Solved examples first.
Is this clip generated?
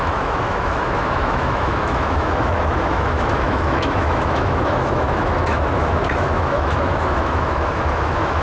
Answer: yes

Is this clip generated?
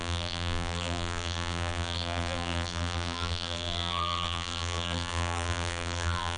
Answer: yes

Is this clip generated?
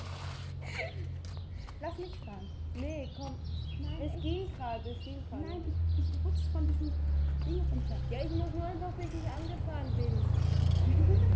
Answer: no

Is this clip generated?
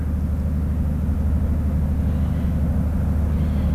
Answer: no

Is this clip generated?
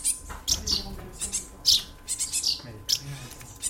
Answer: no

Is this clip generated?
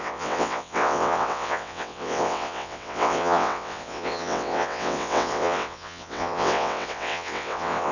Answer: yes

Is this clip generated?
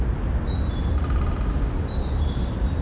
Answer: no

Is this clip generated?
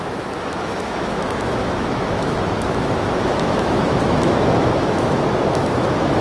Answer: yes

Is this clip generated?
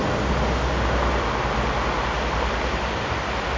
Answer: no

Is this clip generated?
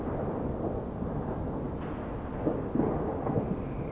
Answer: no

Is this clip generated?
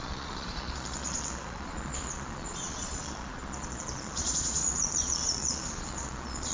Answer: yes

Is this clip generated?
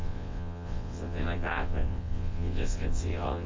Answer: yes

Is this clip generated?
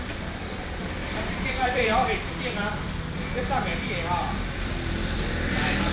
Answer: yes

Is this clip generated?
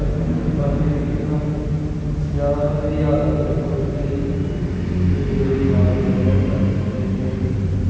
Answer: no